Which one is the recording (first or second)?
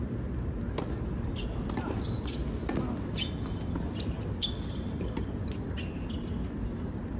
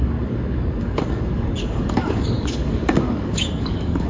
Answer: first